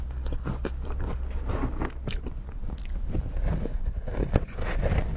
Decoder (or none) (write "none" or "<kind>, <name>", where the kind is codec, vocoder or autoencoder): none